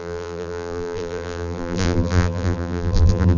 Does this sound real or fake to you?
fake